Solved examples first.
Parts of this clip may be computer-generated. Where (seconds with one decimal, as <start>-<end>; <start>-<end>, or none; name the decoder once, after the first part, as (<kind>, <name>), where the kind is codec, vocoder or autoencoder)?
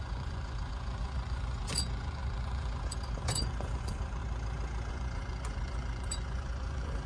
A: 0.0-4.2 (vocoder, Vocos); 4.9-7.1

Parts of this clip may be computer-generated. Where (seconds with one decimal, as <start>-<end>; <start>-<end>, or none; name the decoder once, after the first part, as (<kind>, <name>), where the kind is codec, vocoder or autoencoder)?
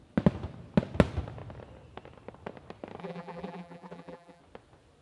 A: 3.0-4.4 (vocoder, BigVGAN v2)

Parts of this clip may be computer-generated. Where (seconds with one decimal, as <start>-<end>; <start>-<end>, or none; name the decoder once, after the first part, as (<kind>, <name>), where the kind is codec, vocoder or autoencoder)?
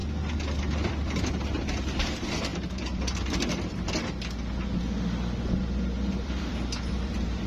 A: 0.6-7.5 (vocoder, BigVGAN v2)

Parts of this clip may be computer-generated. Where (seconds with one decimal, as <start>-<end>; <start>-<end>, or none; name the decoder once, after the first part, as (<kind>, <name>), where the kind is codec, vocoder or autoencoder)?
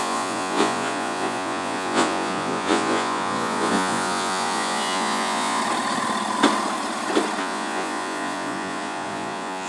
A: 0.0-5.6 (vocoder, Vocos); 7.4-9.7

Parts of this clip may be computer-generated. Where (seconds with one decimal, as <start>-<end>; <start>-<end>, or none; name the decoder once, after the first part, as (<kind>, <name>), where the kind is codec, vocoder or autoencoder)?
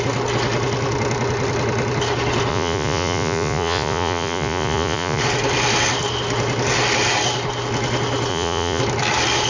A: 2.5-5.2 (vocoder, Vocos); 8.3-8.8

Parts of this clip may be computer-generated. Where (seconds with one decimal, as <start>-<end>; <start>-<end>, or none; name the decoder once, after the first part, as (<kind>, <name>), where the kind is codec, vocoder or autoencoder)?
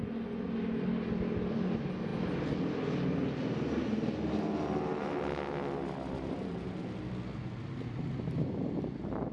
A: none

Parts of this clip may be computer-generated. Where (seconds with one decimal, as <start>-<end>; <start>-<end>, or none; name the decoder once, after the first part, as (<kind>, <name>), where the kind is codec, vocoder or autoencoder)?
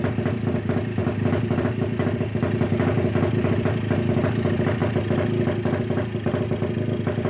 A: 1.0-1.7 (vocoder, BigVGAN v2)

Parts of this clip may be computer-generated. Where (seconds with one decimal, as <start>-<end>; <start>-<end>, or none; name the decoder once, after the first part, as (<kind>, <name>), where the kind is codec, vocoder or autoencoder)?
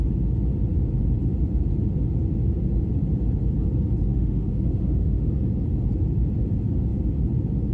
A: 4.1-5.3 (autoencoder, DAC-VAE)